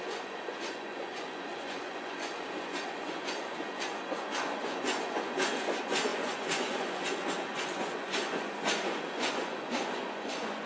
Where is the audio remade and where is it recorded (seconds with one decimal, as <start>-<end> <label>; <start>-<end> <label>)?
0.0-10.7 remade